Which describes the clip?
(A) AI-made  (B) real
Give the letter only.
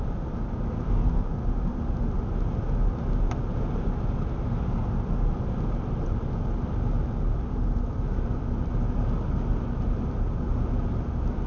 B